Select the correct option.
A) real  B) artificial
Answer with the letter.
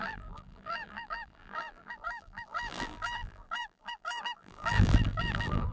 B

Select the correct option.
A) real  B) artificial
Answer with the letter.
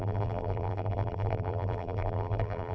B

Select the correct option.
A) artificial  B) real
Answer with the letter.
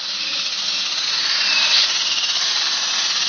B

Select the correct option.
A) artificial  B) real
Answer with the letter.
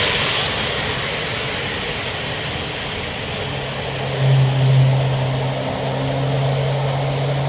B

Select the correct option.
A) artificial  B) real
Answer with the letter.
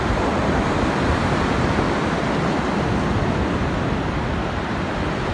B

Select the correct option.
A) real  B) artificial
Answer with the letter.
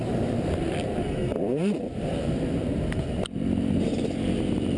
B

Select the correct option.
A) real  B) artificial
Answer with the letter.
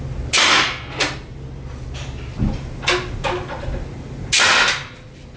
A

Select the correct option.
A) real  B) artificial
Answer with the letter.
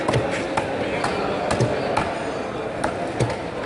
A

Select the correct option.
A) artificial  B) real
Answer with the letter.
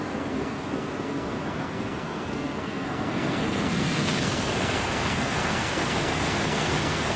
A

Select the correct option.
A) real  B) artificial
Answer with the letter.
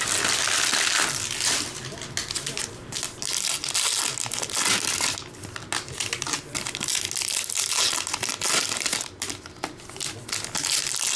A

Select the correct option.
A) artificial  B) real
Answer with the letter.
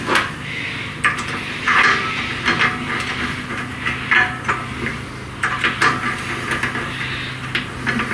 B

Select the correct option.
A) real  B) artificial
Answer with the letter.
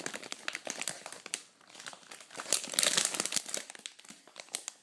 A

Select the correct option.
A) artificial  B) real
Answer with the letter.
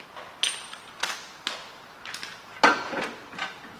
B